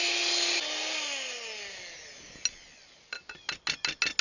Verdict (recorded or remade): recorded